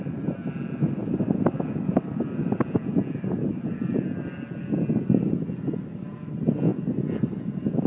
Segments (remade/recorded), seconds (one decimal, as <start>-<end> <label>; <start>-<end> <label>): 0.0-7.9 recorded